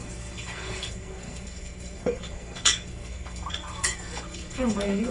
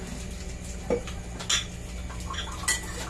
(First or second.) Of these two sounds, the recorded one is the second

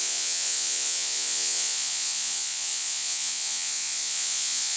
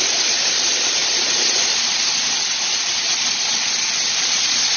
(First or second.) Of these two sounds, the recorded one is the second